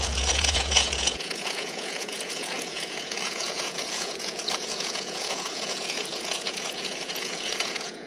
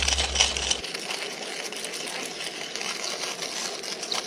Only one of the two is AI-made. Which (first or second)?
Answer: first